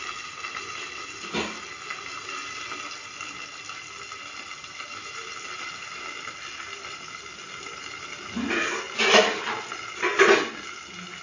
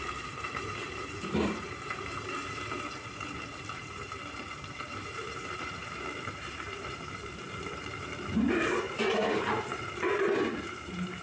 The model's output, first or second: second